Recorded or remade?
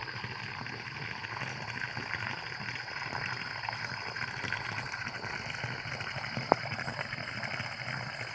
recorded